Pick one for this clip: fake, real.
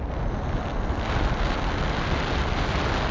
real